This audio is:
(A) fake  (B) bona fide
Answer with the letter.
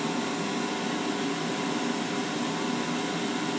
B